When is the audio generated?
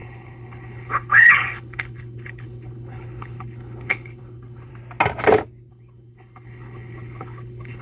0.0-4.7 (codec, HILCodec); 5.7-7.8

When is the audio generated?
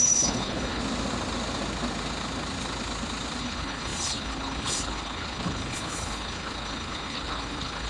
0.0-0.8 (codec, HILCodec); 3.4-7.9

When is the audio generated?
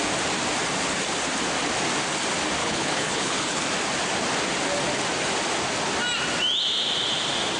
2.6-3.6 (codec, HILCodec)